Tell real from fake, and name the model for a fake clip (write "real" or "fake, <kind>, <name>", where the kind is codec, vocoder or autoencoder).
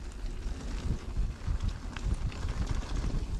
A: real